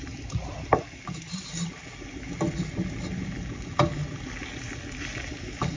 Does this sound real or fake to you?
real